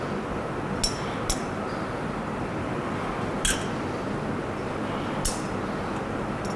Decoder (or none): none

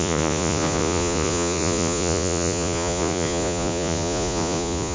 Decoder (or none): vocoder, Vocos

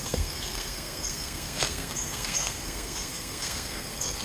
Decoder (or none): codec, SNAC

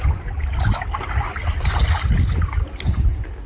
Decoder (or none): none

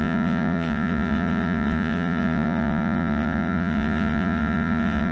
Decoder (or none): vocoder, Vocos